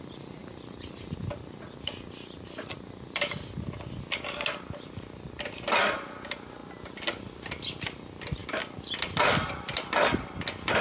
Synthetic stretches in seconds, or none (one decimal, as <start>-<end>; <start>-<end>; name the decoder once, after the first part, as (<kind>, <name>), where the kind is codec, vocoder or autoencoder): none